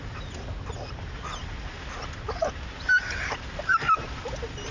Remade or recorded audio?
recorded